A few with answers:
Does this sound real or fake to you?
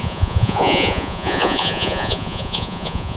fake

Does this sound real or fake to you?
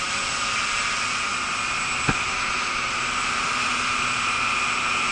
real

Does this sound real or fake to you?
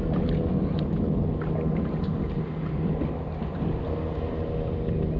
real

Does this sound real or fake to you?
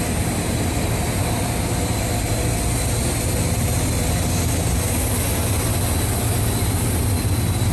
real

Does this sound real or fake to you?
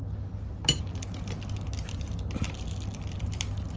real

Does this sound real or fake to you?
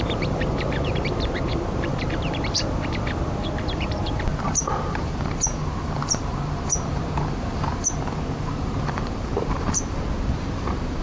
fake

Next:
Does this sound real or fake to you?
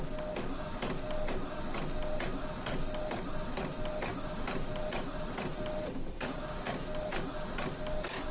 real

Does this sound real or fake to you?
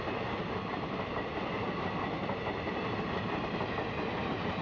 real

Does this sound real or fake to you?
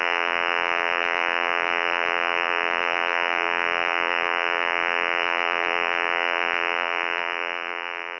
fake